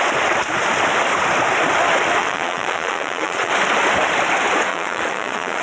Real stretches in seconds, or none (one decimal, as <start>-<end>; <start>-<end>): 0.0-2.2; 3.5-4.7